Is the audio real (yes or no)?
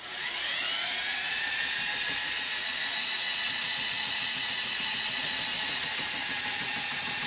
no